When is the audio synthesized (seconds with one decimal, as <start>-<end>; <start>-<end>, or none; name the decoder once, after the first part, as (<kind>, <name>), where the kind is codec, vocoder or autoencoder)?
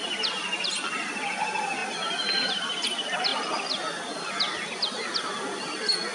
none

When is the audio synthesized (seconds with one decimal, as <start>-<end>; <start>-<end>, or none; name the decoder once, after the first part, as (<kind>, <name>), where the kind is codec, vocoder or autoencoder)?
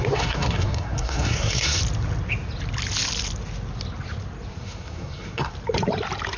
0.0-1.8 (codec, SNAC); 4.5-5.5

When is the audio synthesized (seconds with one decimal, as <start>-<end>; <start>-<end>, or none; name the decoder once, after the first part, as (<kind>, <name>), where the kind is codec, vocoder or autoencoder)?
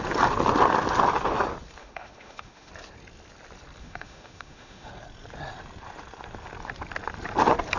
1.8-2.7 (autoencoder, DAC-VAE); 3.8-4.9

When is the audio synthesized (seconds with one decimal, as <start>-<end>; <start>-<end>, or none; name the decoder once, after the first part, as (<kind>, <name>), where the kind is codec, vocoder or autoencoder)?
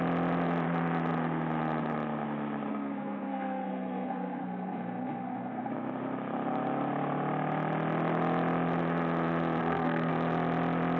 2.7-5.7 (codec, SNAC); 9.6-10.1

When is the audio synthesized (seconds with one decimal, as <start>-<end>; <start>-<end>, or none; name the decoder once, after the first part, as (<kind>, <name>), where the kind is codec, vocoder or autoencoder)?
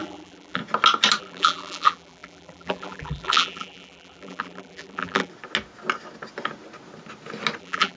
0.0-0.6 (vocoder, BigVGAN v2); 1.2-5.3; 7.6-8.0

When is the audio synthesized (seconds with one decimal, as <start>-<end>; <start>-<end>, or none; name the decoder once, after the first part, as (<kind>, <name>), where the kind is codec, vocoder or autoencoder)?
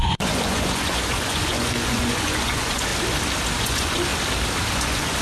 0.0-2.9 (vocoder, Vocos); 3.6-4.1; 4.7-5.2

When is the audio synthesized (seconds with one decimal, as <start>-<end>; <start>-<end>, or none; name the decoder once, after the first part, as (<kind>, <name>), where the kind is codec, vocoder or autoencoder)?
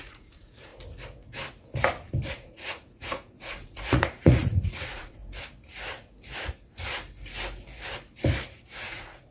0.0-0.7 (vocoder, Vocos); 2.3-5.2; 8.9-9.3